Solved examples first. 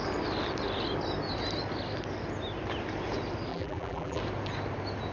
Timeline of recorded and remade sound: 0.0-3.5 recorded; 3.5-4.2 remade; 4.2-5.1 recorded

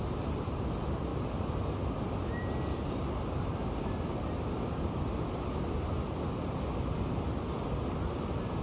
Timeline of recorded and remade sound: 0.0-8.6 recorded

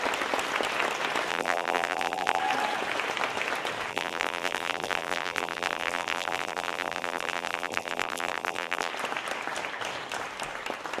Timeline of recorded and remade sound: 0.0-1.3 recorded; 1.3-2.4 remade; 2.4-3.9 recorded; 3.9-8.9 remade; 8.9-11.0 recorded